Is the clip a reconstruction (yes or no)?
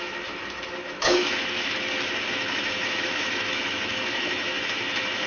yes